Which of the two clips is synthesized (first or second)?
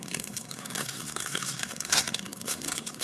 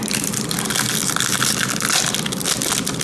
first